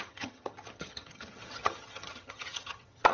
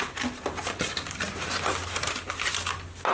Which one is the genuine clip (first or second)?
second